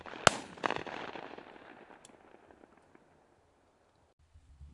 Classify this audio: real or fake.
real